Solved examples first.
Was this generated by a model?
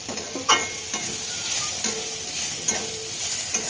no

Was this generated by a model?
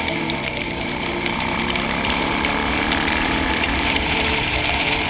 yes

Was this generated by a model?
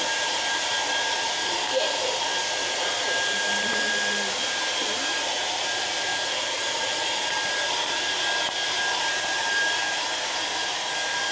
yes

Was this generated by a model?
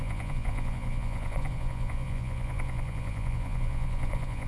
yes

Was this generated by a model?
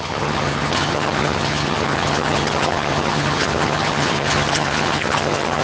yes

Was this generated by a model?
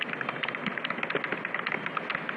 no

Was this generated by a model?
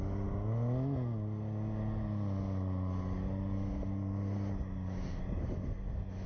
no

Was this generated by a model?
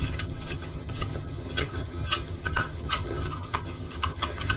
yes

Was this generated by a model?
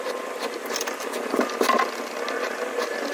no